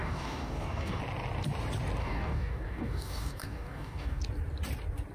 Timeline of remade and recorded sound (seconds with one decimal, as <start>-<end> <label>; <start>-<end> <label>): 0.0-1.0 remade; 1.0-2.0 recorded; 2.0-4.2 remade; 4.2-5.1 recorded